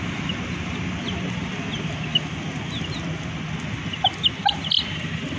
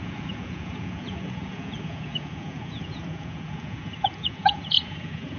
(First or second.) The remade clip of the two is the second